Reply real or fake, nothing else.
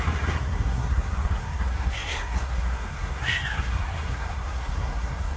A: fake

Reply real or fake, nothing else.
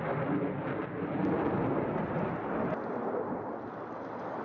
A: real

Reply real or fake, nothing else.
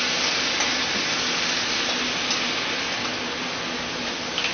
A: real